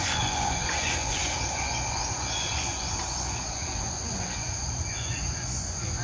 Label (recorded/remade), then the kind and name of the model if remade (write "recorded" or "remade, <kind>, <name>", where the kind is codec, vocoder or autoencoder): remade, vocoder, Vocos